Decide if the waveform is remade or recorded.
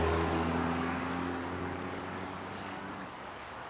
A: remade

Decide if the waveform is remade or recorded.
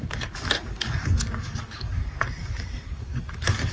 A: remade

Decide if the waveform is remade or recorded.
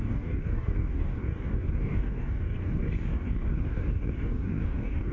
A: remade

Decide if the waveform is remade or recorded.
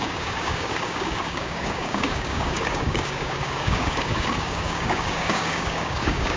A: remade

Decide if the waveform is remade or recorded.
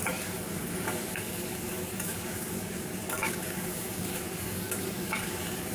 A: remade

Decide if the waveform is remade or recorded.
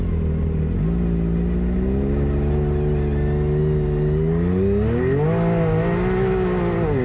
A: recorded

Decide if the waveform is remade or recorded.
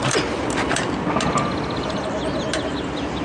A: recorded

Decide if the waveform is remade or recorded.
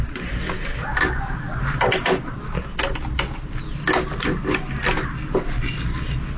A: recorded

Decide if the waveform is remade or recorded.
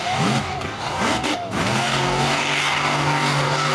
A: remade